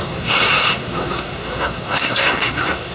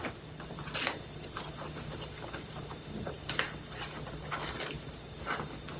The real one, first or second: second